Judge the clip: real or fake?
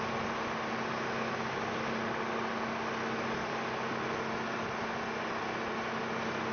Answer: real